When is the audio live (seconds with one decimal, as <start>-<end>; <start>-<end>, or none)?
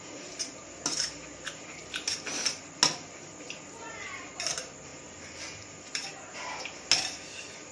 0.0-7.7